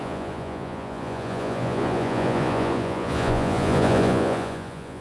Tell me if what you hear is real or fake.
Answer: fake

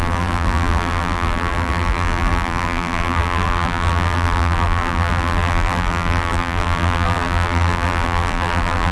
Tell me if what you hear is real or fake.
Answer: fake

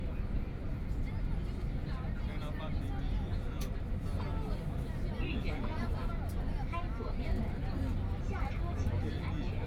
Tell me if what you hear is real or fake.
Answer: real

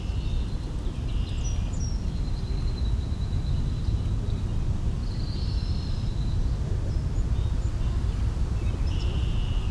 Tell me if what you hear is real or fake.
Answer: real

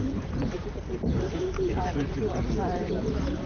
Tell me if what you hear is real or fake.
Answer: fake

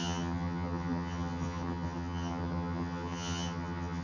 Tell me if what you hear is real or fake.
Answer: fake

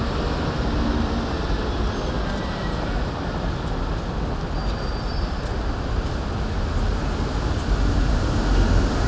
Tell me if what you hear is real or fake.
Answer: real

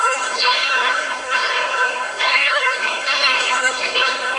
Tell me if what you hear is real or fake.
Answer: fake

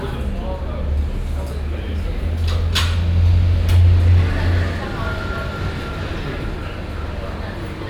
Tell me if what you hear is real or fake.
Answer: real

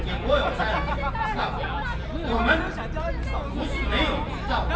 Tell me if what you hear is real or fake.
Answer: real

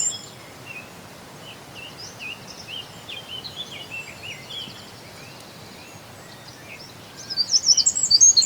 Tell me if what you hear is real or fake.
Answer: real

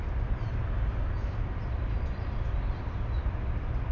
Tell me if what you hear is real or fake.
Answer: real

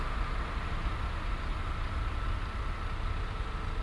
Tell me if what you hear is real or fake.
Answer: real